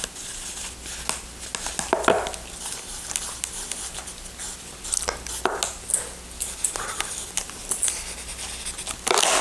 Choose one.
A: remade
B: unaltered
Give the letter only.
B